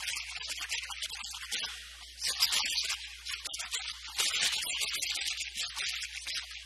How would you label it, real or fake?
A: real